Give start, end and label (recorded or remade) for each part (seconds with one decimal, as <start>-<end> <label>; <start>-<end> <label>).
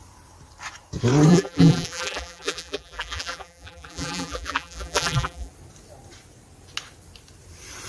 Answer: 0.0-1.3 recorded; 1.3-5.5 remade; 5.5-7.9 recorded